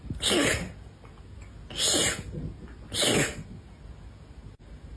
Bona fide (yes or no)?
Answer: yes